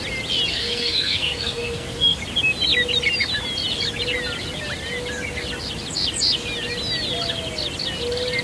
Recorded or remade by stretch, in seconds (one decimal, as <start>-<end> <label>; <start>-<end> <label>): 0.0-0.5 recorded; 0.5-2.2 remade; 2.2-8.4 recorded